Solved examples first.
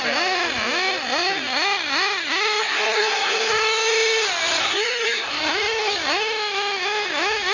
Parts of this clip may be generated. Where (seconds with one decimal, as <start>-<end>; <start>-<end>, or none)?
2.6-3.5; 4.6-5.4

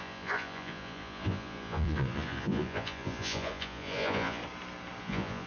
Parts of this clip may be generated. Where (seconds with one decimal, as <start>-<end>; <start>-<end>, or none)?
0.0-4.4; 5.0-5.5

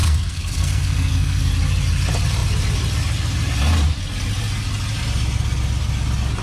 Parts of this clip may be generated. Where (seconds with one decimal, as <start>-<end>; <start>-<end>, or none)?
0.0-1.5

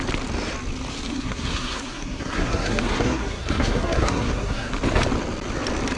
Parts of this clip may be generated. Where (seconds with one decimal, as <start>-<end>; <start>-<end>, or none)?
1.1-4.7

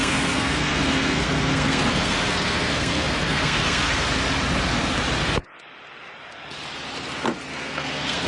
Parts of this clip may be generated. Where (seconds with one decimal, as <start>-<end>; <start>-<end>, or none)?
0.0-4.1; 7.5-8.3